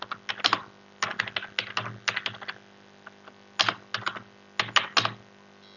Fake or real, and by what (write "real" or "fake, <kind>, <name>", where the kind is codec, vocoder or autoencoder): real